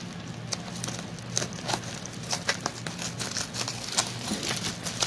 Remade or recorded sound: recorded